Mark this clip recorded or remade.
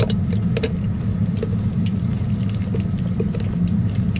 recorded